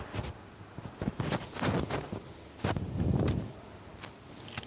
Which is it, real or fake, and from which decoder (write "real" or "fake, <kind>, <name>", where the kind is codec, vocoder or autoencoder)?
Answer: real